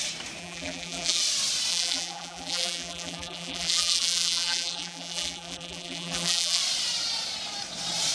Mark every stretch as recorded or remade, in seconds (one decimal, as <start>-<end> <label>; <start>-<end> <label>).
0.0-0.4 recorded; 0.4-1.2 remade; 1.2-1.7 recorded; 1.7-6.6 remade; 6.6-8.1 recorded